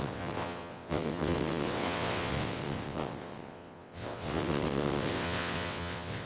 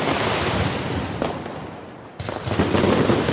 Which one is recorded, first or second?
second